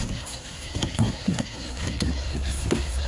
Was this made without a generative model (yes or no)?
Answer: no